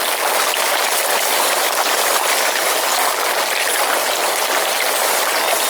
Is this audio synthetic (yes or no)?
no